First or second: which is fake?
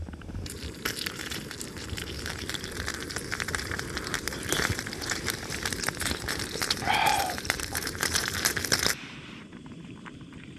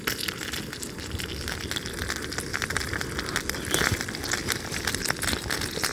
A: first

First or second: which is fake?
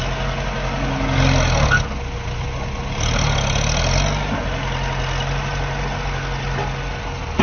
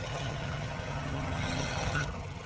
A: second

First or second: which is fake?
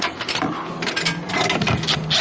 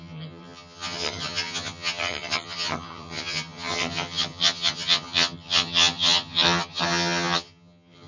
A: second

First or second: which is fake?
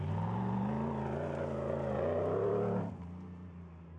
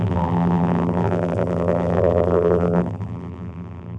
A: second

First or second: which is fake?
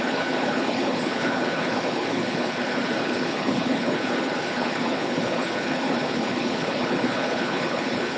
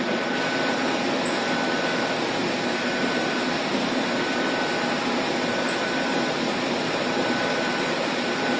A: first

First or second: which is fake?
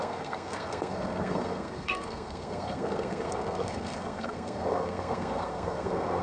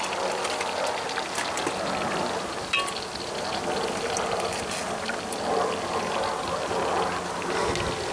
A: first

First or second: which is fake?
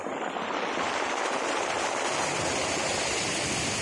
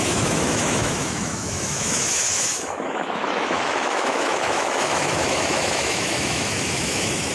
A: second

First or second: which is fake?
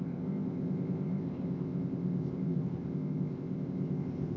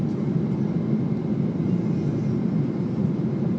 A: first